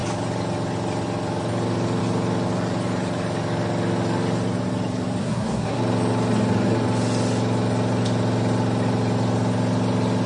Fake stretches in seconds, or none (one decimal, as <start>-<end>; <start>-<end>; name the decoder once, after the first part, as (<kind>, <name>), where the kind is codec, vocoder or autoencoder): 5.2-5.8 (codec, SNAC)